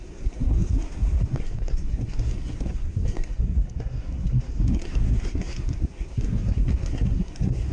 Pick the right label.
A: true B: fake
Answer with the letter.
B